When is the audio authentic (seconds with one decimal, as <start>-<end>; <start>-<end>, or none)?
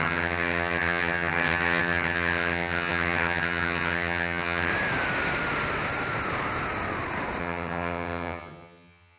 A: 4.7-7.4